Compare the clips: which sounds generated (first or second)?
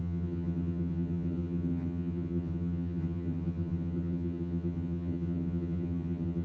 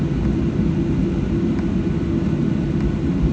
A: first